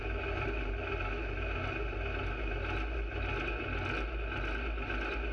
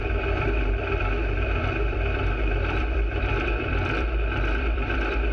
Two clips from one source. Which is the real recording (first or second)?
first